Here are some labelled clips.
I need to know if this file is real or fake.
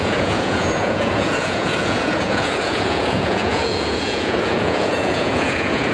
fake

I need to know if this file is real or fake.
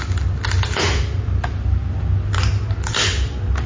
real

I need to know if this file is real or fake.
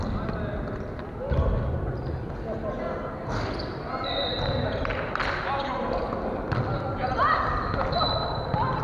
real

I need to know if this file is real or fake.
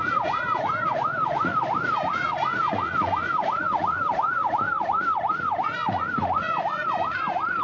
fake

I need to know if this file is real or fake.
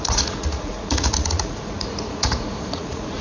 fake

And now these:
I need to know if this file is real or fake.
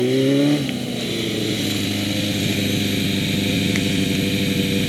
real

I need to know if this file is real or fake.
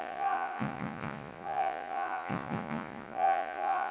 fake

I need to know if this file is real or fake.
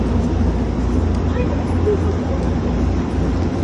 real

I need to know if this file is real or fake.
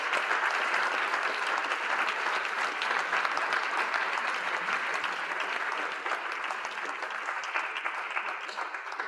real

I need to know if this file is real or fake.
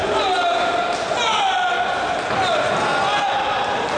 real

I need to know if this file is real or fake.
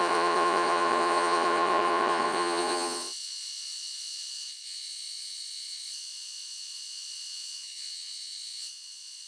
fake